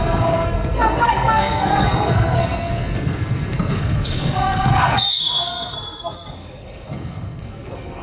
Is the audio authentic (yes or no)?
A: no